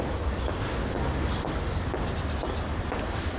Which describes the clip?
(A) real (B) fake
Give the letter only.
A